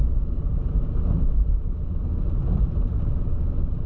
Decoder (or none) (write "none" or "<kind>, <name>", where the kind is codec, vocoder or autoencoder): none